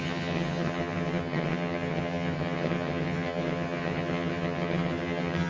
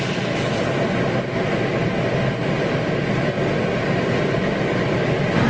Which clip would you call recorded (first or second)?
second